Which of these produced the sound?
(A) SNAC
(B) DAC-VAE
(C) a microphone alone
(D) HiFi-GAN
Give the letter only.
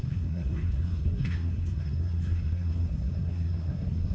A